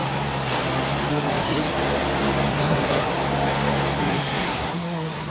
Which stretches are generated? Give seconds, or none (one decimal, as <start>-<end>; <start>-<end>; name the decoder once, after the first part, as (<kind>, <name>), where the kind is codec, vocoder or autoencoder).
1.1-1.7 (codec, SNAC); 2.5-3.1; 4.0-5.3